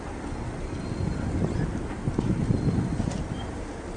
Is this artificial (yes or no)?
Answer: no